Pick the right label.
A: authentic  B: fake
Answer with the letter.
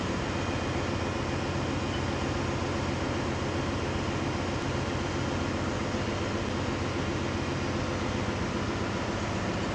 A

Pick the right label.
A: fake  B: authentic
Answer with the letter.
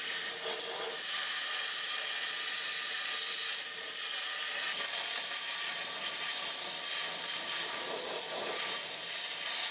B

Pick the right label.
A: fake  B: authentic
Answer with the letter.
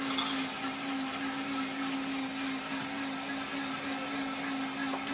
B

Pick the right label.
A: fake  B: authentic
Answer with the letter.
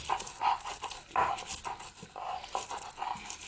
B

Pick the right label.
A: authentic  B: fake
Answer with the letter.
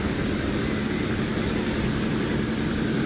A